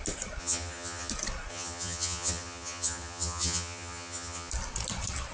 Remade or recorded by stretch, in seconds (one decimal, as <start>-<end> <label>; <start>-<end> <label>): 0.0-0.4 recorded; 0.4-1.1 remade; 1.1-1.5 recorded; 1.5-4.5 remade; 4.5-5.3 recorded